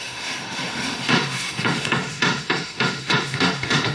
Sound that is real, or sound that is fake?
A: fake